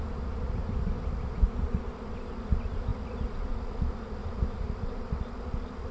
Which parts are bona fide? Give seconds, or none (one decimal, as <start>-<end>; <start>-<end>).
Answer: 0.0-4.2; 5.2-5.9